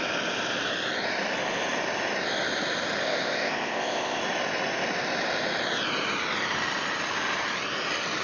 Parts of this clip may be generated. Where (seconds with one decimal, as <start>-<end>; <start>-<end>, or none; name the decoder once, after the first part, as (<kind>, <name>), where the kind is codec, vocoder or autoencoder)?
3.0-4.2 (codec, ZipCodec)